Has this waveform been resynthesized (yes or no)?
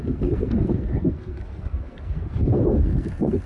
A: yes